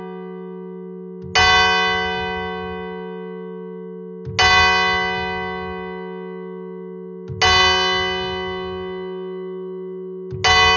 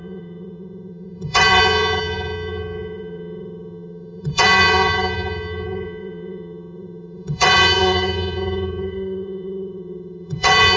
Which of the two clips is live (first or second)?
first